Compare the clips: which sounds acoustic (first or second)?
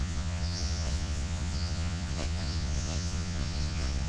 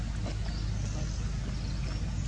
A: second